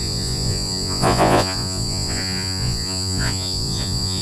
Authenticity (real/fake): fake